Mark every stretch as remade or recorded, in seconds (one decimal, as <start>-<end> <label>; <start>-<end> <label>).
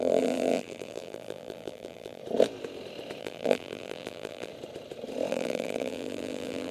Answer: 0.0-2.2 remade; 2.2-3.2 recorded; 3.2-4.5 remade; 4.5-5.3 recorded; 5.3-6.7 remade